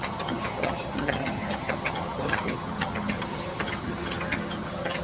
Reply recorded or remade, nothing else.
remade